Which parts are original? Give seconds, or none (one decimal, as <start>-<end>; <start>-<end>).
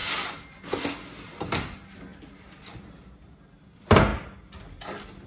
0.0-2.1; 2.9-4.1; 4.6-5.3